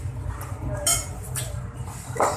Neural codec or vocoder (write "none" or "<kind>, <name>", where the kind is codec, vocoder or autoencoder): none